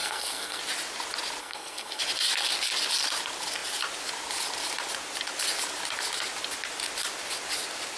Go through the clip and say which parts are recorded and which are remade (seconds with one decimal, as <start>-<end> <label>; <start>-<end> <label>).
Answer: 0.0-0.6 remade; 0.6-1.4 recorded; 1.4-2.0 remade; 2.0-8.0 recorded